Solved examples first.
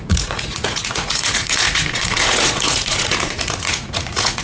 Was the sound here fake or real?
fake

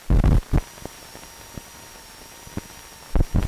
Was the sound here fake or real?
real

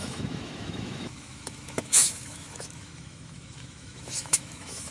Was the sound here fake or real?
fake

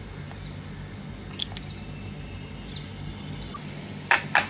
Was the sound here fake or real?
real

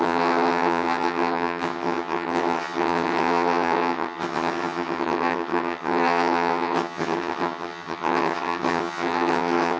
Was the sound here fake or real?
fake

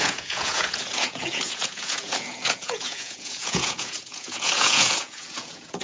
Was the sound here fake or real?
fake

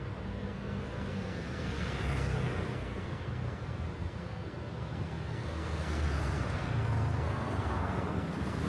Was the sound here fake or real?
fake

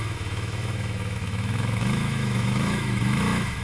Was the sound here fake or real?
fake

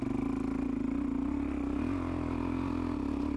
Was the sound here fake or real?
real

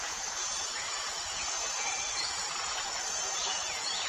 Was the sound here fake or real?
fake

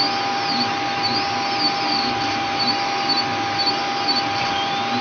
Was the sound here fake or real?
real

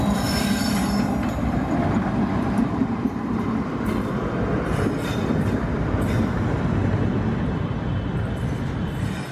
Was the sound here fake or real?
fake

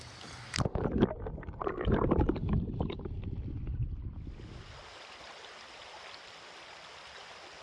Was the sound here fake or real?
real